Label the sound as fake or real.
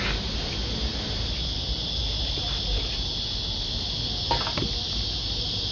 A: real